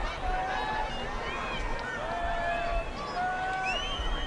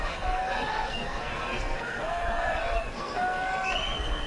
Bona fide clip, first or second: first